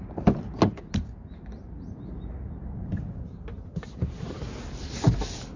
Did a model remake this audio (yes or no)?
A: no